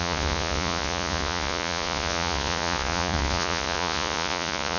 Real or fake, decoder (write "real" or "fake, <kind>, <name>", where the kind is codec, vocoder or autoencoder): fake, vocoder, Vocos